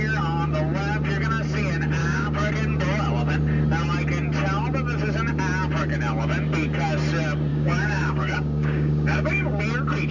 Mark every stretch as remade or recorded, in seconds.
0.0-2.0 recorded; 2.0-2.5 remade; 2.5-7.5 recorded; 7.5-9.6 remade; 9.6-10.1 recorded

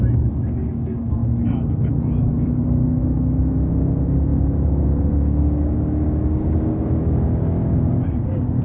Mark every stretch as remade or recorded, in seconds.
0.0-8.6 remade

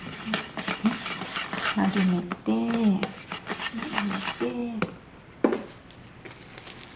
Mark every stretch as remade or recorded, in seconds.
0.0-7.0 recorded

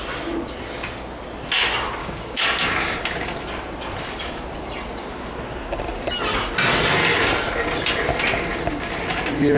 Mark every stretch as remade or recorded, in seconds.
0.0-2.0 recorded; 2.0-3.0 remade; 3.0-9.6 recorded

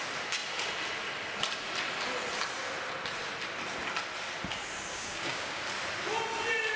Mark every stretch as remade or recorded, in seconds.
0.0-4.9 recorded; 4.9-5.6 remade; 5.6-6.8 recorded

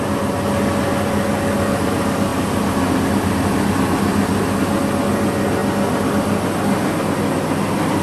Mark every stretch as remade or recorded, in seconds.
0.0-8.0 recorded